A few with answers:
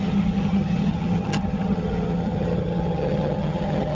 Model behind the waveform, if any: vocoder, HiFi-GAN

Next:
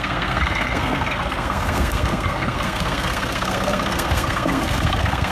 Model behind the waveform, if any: codec, SNAC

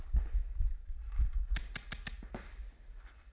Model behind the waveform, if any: none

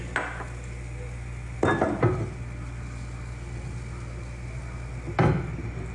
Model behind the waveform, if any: none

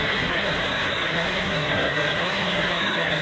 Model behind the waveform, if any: codec, SNAC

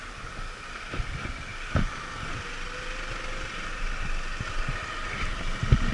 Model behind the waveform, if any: none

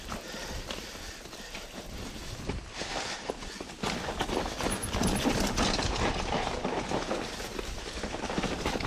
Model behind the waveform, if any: vocoder, BigVGAN v2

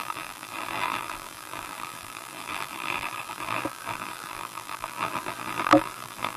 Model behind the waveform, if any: vocoder, BigVGAN v2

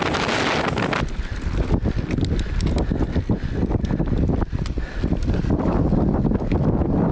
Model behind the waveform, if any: none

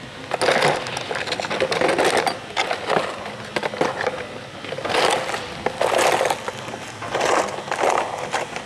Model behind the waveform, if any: none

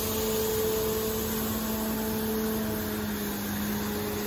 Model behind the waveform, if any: none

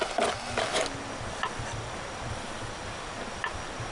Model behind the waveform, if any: none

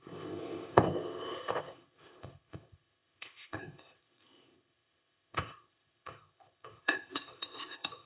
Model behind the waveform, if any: codec, ZipCodec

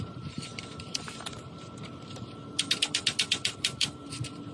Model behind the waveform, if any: vocoder, BigVGAN v2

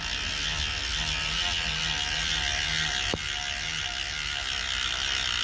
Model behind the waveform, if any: none